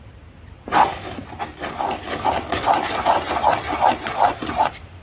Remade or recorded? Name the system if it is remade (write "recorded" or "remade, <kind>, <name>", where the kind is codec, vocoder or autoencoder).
recorded